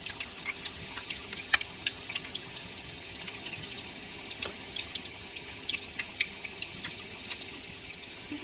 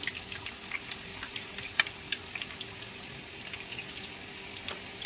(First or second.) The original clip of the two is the second